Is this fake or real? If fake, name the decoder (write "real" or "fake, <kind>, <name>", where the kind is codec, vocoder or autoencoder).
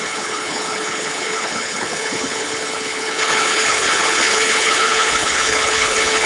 fake, codec, HILCodec